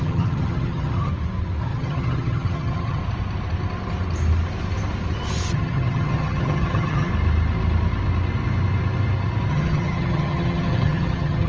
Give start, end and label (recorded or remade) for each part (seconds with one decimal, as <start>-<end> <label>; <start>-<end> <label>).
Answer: 0.0-1.1 remade; 1.1-1.6 recorded; 1.6-3.0 remade; 3.0-5.5 recorded; 5.5-7.1 remade; 7.1-9.5 recorded; 9.5-11.5 remade